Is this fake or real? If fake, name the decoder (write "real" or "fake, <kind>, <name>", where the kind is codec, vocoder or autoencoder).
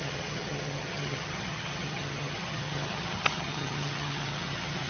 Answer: fake, vocoder, HiFi-GAN